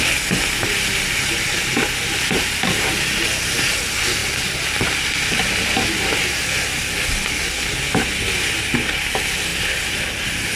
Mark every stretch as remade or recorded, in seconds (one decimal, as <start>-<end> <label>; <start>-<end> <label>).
0.0-10.6 recorded